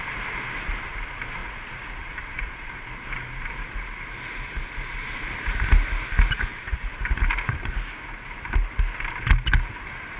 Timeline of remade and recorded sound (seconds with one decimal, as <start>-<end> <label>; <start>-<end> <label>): 0.0-1.4 recorded; 1.4-2.7 remade; 2.7-6.5 recorded; 6.5-7.0 remade; 7.0-10.2 recorded